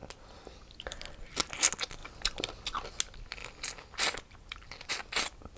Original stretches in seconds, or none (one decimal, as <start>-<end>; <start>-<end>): 0.0-5.6